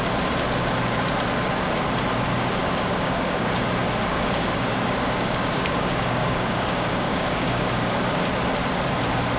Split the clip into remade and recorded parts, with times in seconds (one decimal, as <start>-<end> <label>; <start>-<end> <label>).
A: 0.0-2.6 recorded; 2.6-3.6 remade; 3.6-4.1 recorded; 4.1-8.2 remade; 8.2-9.4 recorded